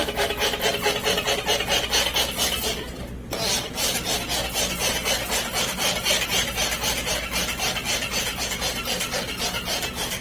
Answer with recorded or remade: recorded